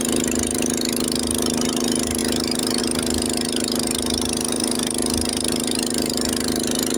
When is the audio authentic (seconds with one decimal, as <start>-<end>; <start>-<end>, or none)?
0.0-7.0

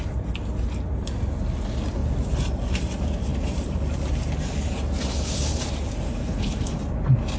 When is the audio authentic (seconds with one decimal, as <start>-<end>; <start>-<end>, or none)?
0.0-6.2; 6.8-7.4

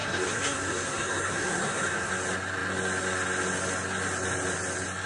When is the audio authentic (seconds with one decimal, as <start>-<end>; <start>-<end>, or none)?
2.1-5.1